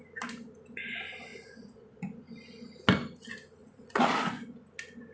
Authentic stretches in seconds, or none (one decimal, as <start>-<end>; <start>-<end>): 0.0-1.3; 2.0-3.6; 4.3-5.1